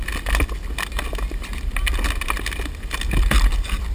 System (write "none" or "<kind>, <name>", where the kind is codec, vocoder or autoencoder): none